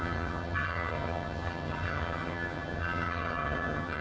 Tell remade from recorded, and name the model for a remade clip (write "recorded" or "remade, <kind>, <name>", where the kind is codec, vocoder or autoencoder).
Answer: remade, vocoder, HiFi-GAN